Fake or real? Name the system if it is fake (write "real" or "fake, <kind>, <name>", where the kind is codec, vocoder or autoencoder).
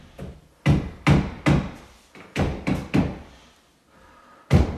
real